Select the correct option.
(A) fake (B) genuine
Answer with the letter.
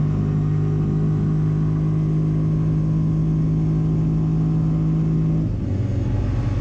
B